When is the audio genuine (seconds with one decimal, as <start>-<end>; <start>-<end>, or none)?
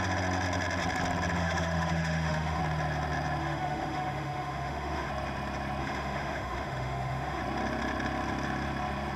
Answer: 0.0-1.4; 2.6-3.4; 5.1-5.8; 7.4-9.2